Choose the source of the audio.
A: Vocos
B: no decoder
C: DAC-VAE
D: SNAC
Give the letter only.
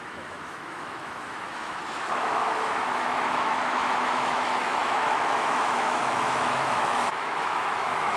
C